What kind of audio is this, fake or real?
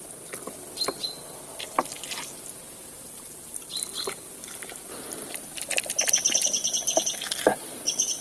real